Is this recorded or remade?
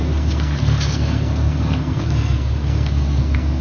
remade